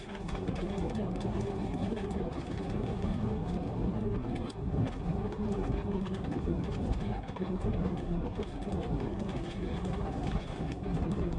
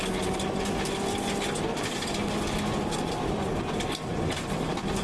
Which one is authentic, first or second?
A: second